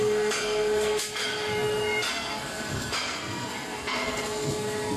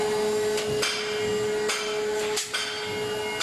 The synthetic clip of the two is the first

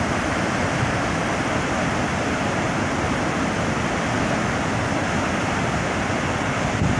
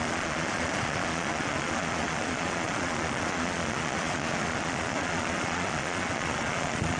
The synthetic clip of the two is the second